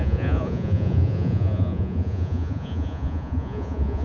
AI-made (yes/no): yes